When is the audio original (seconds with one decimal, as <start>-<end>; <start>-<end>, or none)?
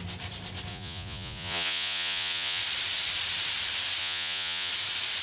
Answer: 0.0-0.7; 2.6-4.0; 4.7-5.2